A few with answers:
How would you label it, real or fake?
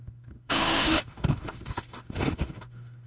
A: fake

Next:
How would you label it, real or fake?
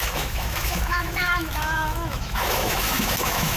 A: fake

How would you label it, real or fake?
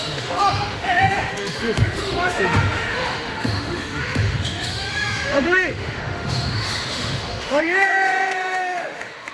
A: fake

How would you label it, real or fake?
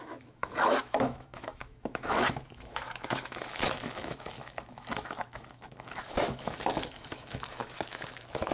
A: fake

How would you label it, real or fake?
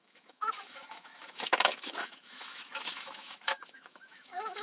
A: fake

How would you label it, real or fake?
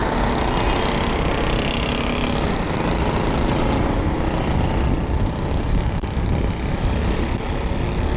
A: real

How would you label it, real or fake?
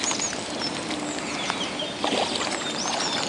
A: real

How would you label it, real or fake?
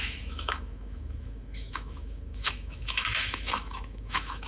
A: fake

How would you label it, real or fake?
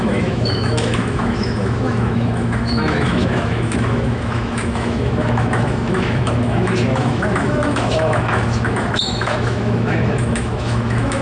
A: fake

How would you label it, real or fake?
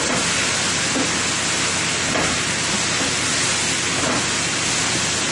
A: real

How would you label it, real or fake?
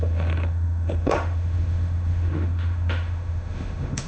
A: fake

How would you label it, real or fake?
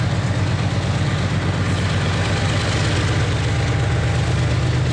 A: real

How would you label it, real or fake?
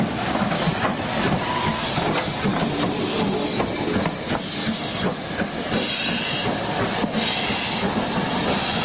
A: real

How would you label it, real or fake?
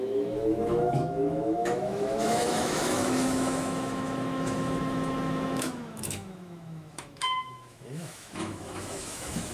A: fake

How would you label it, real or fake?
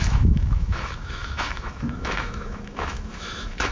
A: fake